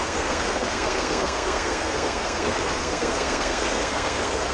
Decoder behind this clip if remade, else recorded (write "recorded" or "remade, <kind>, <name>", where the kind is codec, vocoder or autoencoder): remade, codec, SNAC